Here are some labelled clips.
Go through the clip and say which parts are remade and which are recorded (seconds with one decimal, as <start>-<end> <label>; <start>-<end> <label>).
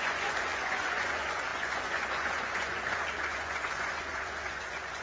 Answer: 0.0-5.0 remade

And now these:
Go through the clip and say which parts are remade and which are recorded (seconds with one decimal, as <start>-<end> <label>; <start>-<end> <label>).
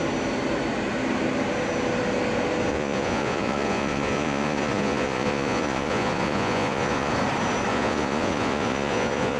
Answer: 0.0-2.7 recorded; 2.7-7.1 remade; 7.1-7.7 recorded; 7.7-9.4 remade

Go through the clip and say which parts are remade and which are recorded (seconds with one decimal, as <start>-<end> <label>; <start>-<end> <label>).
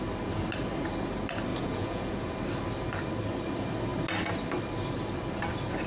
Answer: 0.0-1.5 recorded; 1.5-2.3 remade; 2.3-5.9 recorded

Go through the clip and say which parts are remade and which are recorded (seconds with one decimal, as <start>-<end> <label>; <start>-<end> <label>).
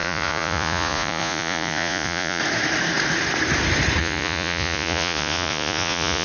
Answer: 0.0-2.4 remade; 2.4-4.0 recorded; 4.0-6.2 remade